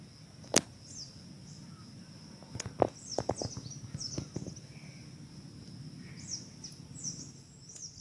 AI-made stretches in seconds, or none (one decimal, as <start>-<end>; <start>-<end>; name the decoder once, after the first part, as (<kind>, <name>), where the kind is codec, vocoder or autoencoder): none